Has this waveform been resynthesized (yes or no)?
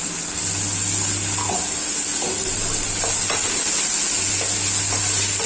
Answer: no